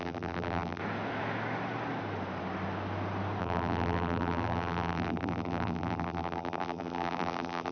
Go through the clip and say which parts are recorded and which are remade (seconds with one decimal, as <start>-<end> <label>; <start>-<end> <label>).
0.0-0.8 remade; 0.8-3.4 recorded; 3.4-7.7 remade